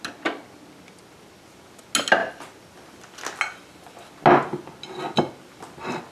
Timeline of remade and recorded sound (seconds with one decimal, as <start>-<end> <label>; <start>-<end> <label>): 0.0-6.1 recorded